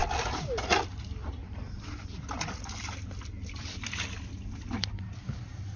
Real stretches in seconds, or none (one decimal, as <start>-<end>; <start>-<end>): 0.0-1.4; 4.9-5.8